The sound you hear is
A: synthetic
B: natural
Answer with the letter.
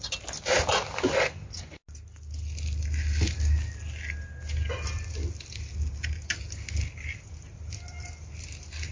B